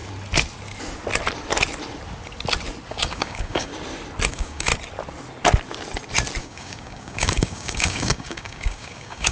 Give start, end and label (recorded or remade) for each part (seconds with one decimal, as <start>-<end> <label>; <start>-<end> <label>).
0.0-2.9 recorded; 2.9-3.7 remade; 3.7-4.3 recorded; 4.3-4.7 remade; 4.7-6.4 recorded; 6.4-9.3 remade